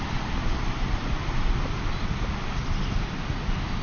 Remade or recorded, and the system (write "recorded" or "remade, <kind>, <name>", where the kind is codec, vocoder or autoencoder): recorded